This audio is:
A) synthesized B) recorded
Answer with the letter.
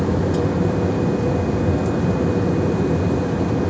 B